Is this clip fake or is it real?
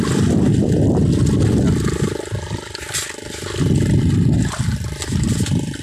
real